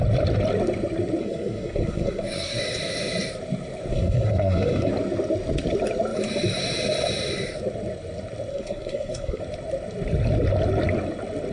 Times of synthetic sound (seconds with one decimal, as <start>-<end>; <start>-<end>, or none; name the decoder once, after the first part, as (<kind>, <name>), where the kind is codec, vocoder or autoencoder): 1.2-2.6 (codec, SNAC); 3.9-4.9; 8.5-9.4